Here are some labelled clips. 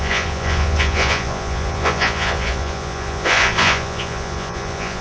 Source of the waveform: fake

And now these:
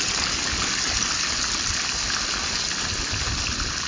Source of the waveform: real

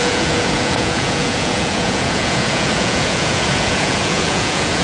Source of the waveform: fake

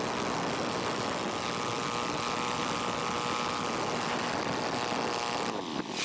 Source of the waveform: real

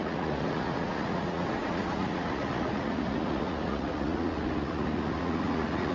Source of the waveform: fake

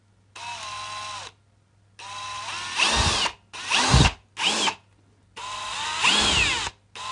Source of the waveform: real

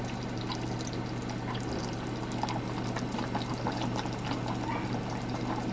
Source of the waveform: real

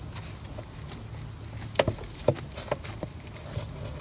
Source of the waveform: real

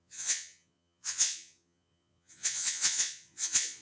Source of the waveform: fake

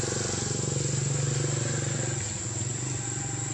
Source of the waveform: real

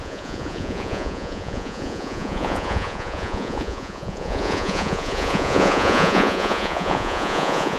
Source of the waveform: fake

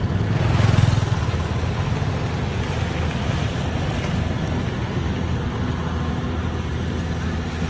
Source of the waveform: real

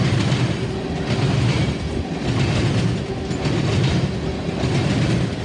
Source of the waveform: real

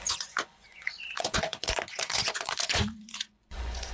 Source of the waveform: fake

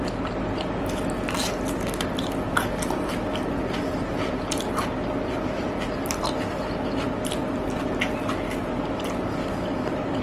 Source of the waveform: real